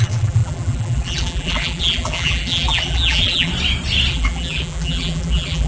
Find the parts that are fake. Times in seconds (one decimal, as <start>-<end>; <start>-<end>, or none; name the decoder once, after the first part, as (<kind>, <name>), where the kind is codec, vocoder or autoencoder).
0.0-3.5 (vocoder, BigVGAN v2); 4.1-5.7